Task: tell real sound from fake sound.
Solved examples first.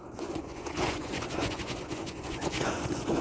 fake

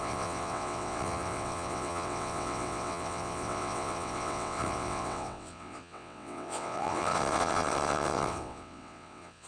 fake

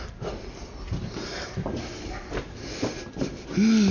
real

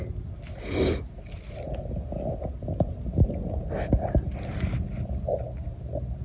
real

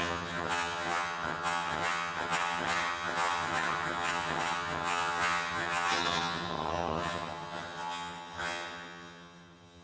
fake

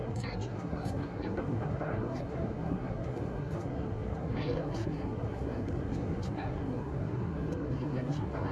fake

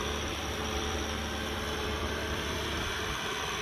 fake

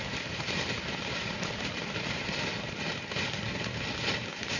fake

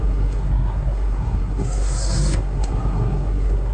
fake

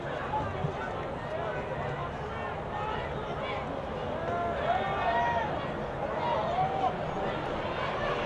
real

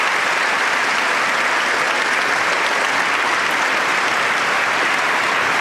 real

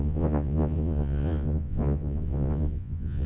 fake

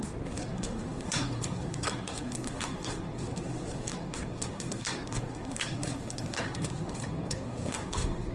fake